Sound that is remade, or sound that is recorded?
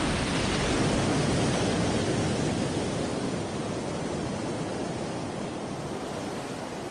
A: recorded